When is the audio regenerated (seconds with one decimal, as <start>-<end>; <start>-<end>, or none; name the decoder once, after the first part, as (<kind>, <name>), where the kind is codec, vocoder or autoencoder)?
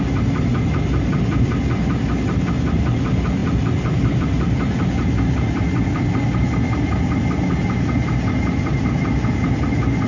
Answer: none